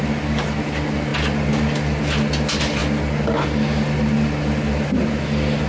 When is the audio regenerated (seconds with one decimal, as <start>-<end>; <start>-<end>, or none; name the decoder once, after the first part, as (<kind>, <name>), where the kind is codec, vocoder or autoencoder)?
none